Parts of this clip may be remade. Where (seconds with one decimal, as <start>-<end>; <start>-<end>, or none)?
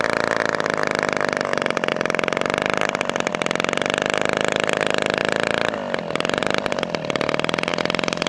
none